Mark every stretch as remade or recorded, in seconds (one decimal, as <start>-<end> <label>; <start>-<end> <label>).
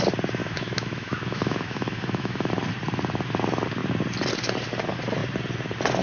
0.0-0.4 recorded; 0.4-2.5 remade; 2.5-6.0 recorded